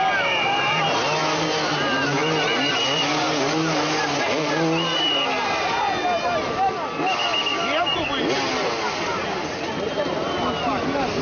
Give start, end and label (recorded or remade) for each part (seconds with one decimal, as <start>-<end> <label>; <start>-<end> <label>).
0.0-11.2 recorded